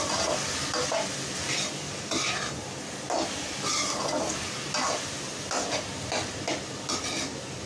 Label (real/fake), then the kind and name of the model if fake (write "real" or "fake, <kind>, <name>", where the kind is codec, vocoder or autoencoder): real